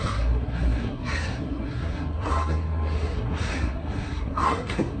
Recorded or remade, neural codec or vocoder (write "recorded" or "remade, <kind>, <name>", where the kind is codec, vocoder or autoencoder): remade, codec, SNAC